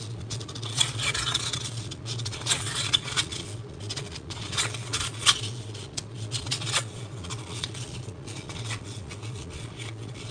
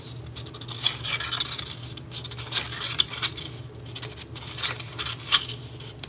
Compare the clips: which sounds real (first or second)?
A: second